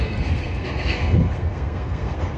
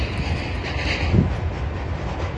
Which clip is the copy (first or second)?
first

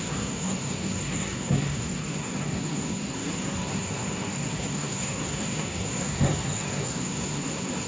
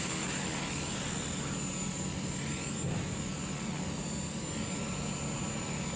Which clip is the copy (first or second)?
first